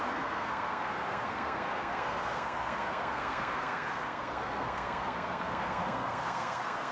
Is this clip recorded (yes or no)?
no